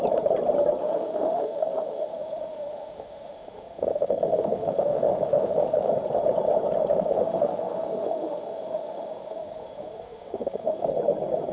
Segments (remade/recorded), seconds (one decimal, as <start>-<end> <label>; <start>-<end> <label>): 0.0-0.8 recorded; 0.8-5.9 remade; 5.9-6.9 recorded; 6.9-10.9 remade; 10.9-11.5 recorded